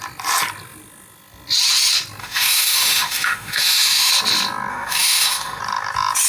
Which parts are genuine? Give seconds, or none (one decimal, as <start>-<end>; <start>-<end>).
0.0-2.2; 4.1-4.7; 5.6-6.3